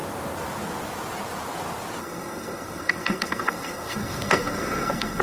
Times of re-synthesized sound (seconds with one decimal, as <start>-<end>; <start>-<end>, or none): 2.0-5.2